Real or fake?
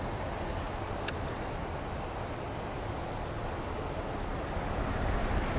real